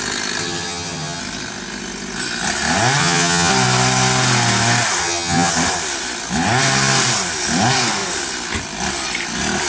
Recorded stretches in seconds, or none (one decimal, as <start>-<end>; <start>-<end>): 0.0-0.4; 1.2-3.0; 3.5-5.0; 5.5-9.7